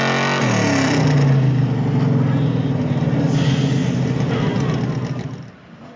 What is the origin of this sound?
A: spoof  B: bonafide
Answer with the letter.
B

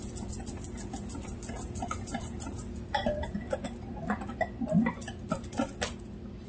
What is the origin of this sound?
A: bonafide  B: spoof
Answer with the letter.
A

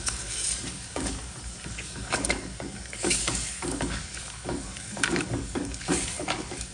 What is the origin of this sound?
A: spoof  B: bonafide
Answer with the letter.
A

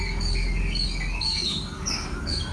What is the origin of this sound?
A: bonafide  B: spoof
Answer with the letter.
B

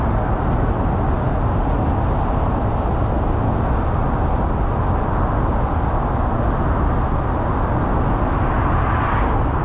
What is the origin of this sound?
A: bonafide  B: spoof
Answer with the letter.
A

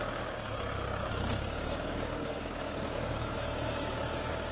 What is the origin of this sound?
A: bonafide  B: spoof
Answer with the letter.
B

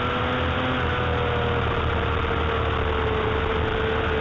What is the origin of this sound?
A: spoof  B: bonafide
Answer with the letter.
B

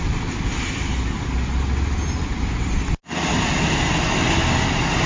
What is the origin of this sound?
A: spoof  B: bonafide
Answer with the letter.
B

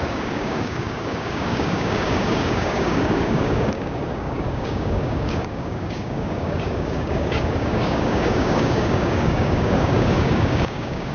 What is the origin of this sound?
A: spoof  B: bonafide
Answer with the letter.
A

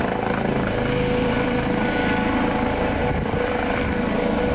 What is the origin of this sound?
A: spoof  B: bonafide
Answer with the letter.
B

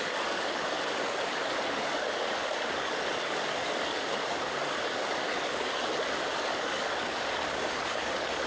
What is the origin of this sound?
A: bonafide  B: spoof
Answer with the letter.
B